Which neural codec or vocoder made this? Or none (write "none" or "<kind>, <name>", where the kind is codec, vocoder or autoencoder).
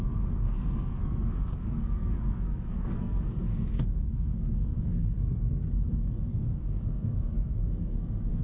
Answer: codec, SNAC